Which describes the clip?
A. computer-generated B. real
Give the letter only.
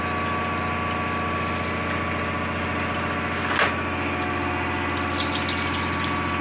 B